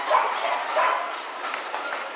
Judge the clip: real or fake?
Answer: real